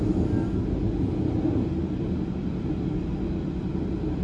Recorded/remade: recorded